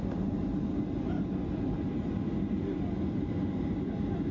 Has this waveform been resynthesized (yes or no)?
no